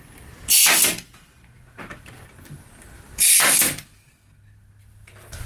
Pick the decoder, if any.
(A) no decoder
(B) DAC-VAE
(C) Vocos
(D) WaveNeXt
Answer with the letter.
A